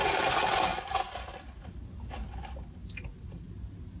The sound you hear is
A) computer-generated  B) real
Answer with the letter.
B